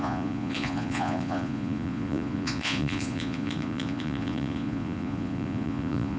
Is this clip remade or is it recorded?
remade